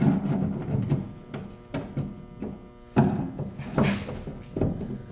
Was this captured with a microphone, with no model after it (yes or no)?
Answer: yes